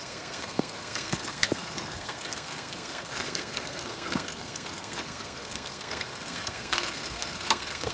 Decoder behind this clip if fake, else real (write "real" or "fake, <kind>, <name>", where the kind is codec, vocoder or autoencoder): fake, codec, SNAC